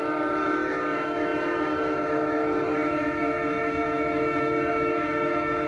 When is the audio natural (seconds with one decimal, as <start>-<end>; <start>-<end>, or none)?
none

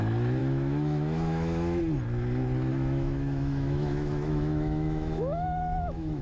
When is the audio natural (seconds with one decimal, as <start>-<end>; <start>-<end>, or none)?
0.0-0.4; 1.8-2.7

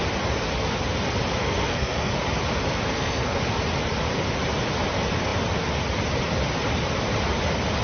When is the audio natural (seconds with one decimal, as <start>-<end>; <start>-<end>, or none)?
0.0-1.4; 2.1-2.9; 3.4-7.8

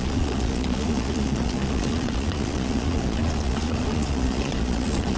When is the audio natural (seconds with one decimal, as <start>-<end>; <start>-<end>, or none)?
none